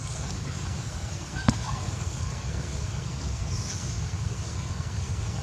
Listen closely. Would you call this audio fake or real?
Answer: fake